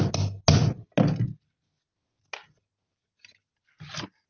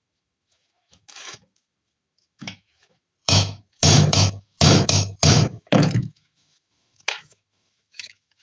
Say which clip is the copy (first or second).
second